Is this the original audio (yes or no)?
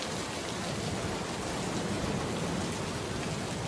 yes